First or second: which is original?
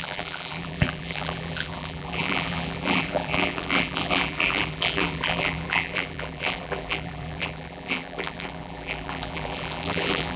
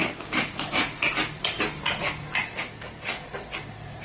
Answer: second